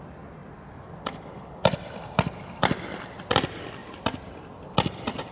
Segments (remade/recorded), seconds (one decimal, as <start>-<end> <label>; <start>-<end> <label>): 0.0-5.3 recorded